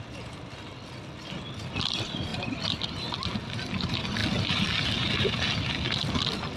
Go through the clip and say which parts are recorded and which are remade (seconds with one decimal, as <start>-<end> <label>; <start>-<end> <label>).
0.0-6.6 recorded

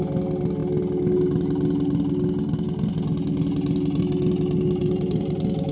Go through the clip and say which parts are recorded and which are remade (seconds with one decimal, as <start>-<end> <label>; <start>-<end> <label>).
0.0-4.8 recorded; 4.8-5.7 remade

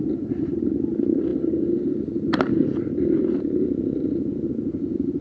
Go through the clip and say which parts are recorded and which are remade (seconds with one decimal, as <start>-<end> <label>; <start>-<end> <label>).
0.0-2.5 remade; 2.5-4.5 recorded; 4.5-5.2 remade

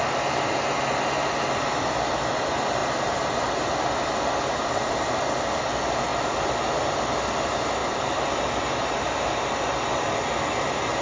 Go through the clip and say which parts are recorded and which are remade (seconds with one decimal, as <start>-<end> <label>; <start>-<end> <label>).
0.0-2.8 recorded; 2.8-5.6 remade; 5.6-6.1 recorded; 6.1-7.0 remade; 7.0-7.8 recorded; 7.8-8.5 remade; 8.5-11.0 recorded

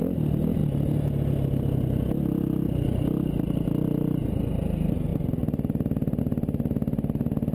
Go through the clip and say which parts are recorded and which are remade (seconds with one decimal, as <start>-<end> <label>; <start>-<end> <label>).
0.0-7.5 recorded

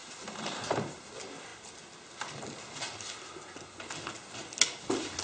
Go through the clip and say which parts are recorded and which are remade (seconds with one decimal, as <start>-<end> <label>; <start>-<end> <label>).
0.0-1.1 remade; 1.1-5.2 recorded

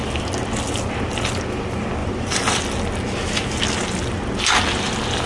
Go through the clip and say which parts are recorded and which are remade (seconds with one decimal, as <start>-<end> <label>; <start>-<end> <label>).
0.0-2.0 recorded; 2.0-2.6 remade; 2.6-5.3 recorded